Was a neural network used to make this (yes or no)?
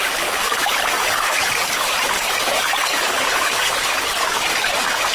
yes